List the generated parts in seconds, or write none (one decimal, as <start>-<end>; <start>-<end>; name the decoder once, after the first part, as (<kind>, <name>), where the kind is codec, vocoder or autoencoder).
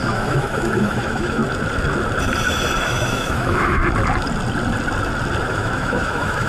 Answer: 0.0-1.4 (autoencoder, DAC-VAE); 2.8-3.8; 5.4-6.5